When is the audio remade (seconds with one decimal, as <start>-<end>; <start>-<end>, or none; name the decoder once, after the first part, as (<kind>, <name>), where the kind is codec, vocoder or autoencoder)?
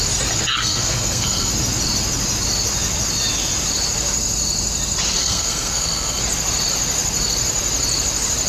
0.6-1.5 (codec, SNAC); 5.2-6.2